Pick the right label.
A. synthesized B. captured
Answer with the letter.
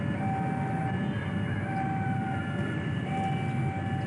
B